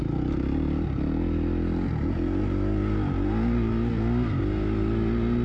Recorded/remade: recorded